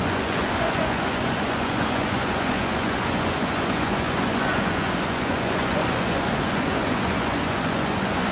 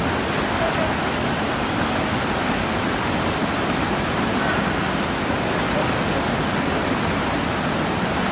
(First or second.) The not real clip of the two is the first